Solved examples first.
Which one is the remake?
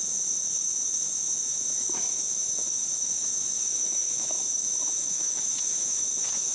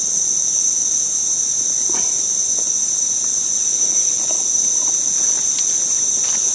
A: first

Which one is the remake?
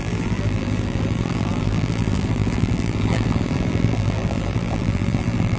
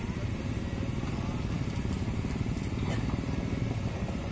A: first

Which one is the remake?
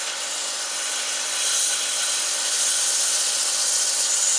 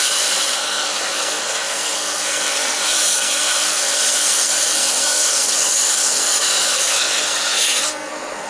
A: second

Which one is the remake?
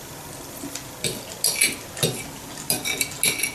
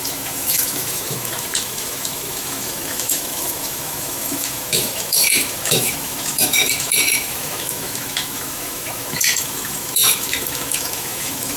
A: second